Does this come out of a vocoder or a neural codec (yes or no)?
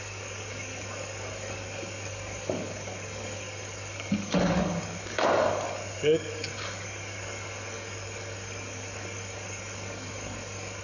yes